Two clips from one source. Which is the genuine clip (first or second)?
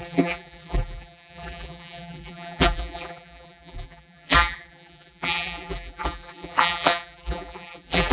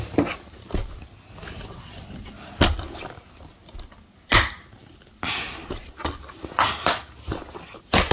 second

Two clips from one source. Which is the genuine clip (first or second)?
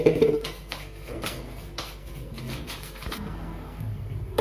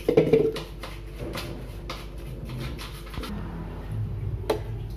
second